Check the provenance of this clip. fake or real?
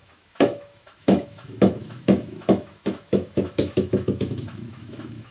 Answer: fake